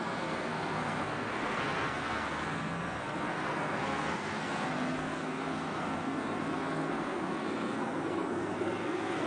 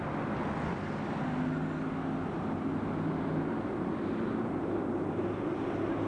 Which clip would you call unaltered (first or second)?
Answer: second